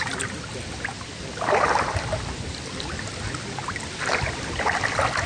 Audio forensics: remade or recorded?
recorded